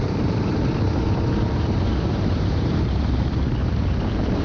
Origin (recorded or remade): remade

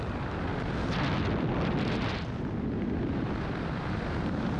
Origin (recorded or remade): recorded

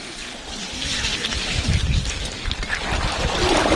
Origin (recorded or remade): remade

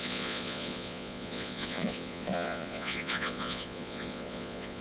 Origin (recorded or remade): remade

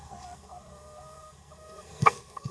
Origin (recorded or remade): remade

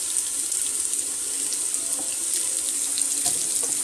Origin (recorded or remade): recorded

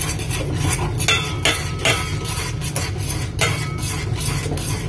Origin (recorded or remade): recorded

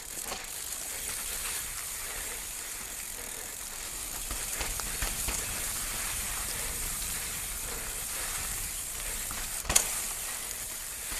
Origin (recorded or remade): remade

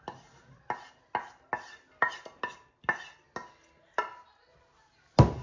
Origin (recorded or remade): recorded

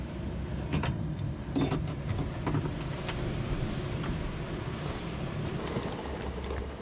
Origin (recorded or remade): recorded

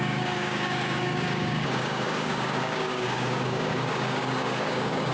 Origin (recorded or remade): remade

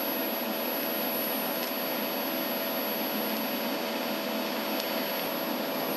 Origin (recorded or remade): recorded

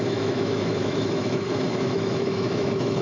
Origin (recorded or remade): remade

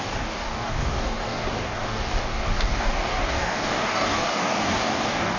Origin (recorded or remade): remade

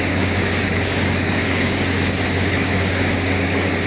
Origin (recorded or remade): remade